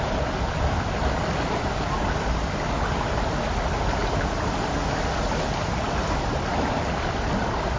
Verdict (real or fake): real